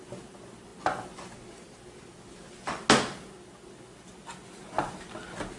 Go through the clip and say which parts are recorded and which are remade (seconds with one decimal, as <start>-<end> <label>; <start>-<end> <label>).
0.0-5.6 recorded